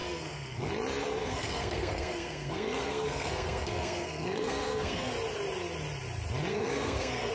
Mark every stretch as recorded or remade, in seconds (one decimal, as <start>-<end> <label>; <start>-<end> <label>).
0.0-0.7 remade; 0.7-1.2 recorded; 1.2-5.1 remade; 5.1-6.5 recorded; 6.5-7.3 remade